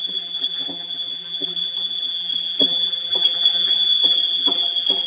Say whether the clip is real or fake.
fake